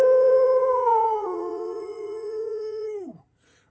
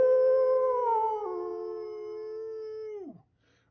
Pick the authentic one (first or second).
second